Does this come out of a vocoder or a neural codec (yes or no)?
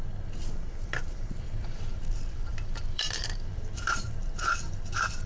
yes